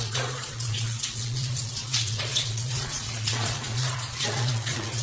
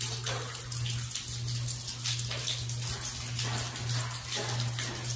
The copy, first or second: first